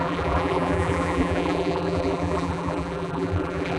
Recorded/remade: remade